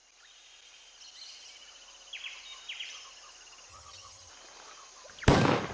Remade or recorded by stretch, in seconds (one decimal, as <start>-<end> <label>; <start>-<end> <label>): 0.0-3.7 recorded; 3.7-4.3 remade; 4.3-5.7 recorded